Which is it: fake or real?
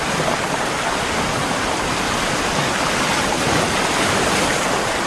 real